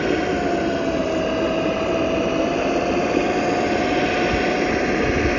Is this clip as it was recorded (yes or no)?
yes